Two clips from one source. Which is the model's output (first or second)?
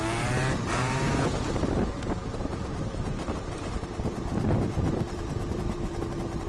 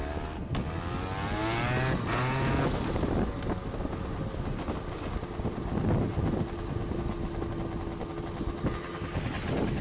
first